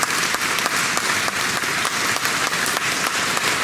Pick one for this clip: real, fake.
real